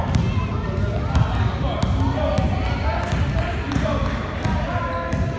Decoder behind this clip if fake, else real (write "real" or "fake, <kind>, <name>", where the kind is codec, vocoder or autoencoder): real